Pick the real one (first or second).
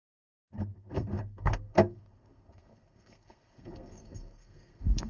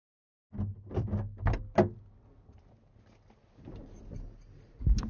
second